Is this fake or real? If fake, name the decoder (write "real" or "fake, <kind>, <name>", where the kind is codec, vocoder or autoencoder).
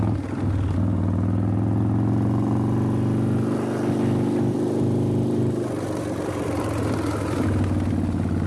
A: real